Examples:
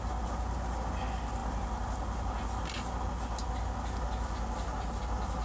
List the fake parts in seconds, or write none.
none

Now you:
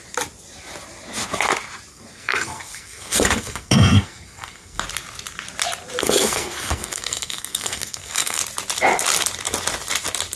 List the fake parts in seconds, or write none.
1.9-4.8 (codec, SNAC); 6.0-8.4

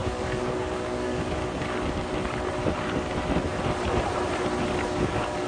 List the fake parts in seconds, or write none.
0.0-1.4 (codec, DAC); 4.7-5.5

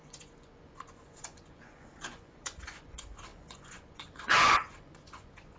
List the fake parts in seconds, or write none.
0.0-5.6 (vocoder, Vocos)

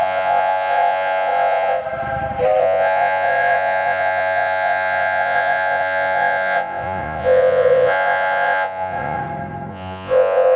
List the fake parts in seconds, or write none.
0.0-1.8 (vocoder, Vocos); 2.6-9.2; 9.7-10.6

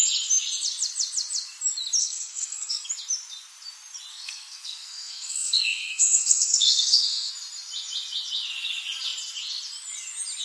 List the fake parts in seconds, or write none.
2.0-2.9 (codec, SNAC); 4.1-7.3

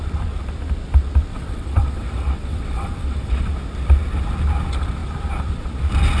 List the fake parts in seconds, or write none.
1.3-3.5 (vocoder, WaveNeXt)

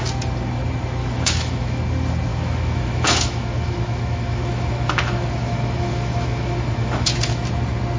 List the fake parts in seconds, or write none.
1.0-1.8 (autoencoder, DAC-VAE); 2.3-7.1